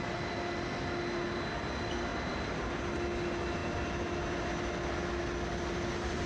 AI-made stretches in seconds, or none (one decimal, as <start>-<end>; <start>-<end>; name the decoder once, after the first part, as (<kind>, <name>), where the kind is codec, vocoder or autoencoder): 2.1-2.7 (vocoder, BigVGAN v2)